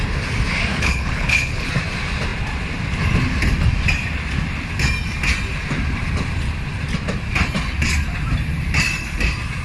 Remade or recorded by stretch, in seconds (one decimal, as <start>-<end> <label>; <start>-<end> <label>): 0.0-0.7 recorded; 0.7-1.7 remade; 1.7-9.6 recorded